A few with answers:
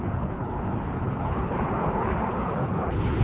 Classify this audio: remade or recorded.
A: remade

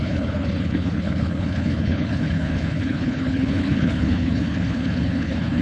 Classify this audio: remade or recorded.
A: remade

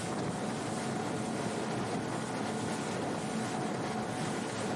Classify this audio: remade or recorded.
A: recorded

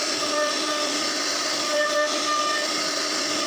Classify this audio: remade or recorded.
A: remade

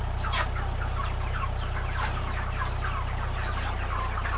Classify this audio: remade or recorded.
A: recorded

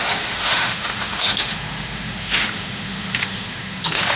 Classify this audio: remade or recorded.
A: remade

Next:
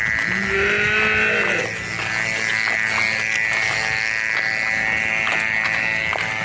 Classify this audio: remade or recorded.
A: recorded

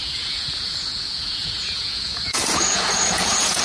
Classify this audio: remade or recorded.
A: remade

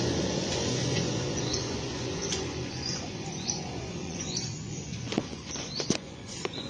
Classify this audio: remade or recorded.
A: remade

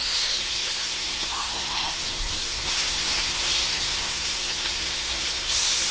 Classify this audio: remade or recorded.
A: remade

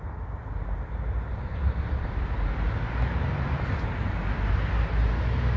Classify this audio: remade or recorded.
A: recorded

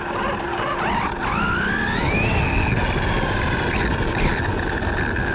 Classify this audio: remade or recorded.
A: recorded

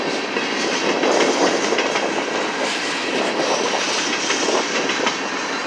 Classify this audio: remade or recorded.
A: recorded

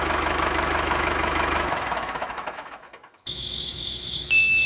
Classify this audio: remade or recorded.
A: remade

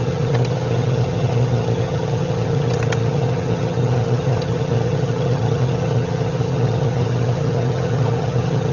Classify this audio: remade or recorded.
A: remade